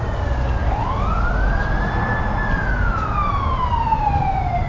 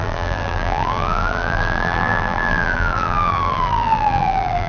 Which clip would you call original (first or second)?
first